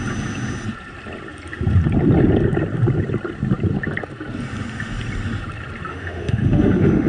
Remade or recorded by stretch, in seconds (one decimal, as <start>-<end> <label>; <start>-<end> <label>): 0.0-5.9 recorded; 5.9-7.1 remade